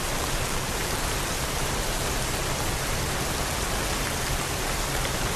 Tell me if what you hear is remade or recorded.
remade